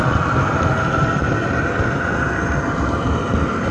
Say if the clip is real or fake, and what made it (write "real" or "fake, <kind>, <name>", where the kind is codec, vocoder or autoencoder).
real